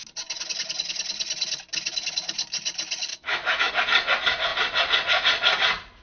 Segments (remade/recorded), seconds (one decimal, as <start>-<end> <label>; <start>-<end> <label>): 0.0-3.1 recorded; 3.1-3.7 remade; 3.7-6.0 recorded